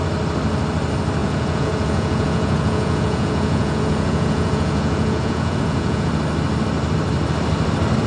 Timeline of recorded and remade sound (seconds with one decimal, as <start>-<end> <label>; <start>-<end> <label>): 0.0-1.2 recorded; 1.2-6.1 remade; 6.1-8.1 recorded